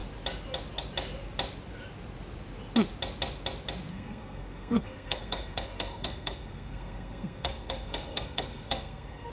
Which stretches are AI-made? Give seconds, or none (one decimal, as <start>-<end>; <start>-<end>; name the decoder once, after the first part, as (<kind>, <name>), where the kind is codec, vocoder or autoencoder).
3.9-9.3 (codec, SNAC)